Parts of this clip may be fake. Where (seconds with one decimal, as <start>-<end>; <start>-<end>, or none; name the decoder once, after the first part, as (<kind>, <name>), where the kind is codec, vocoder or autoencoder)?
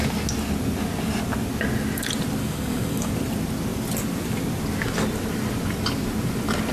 2.4-3.1 (codec, DAC)